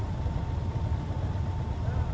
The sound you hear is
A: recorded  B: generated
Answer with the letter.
A